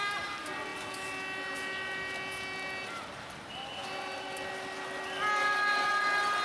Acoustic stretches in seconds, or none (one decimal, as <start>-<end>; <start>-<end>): 0.0-6.4